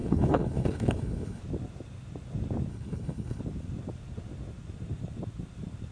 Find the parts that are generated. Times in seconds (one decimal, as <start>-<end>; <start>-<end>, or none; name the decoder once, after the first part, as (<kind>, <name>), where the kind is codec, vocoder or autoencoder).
0.0-1.4 (codec, HILCodec); 2.7-3.4